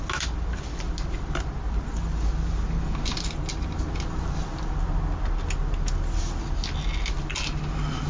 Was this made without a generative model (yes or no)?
yes